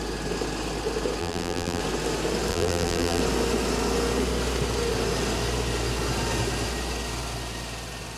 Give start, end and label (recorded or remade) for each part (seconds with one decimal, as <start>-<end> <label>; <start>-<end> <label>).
0.0-1.2 recorded; 1.2-1.8 remade; 1.8-2.5 recorded; 2.5-3.2 remade; 3.2-8.2 recorded